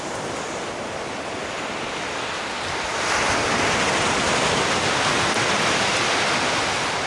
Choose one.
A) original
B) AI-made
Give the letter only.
A